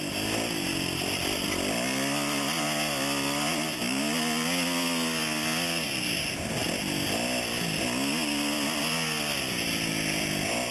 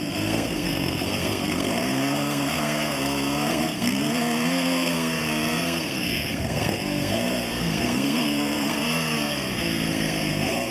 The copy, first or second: second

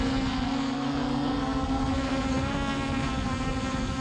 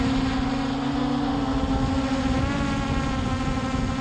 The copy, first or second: first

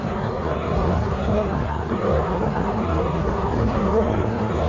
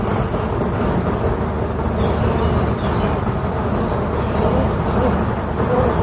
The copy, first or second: first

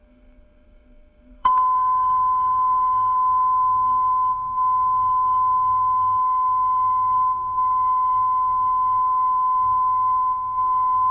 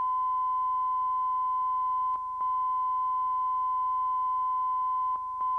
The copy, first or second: first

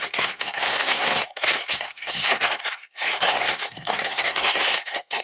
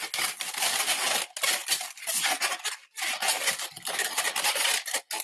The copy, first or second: first